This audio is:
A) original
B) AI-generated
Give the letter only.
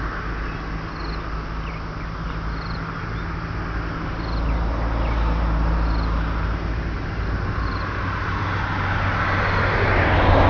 A